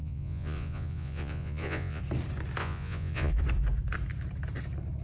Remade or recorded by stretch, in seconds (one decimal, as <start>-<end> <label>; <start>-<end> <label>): 0.0-2.0 remade; 2.0-2.6 recorded; 2.6-3.3 remade; 3.3-5.0 recorded